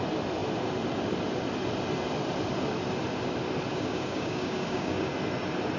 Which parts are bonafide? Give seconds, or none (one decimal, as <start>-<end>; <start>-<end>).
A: 0.0-3.7; 5.1-5.8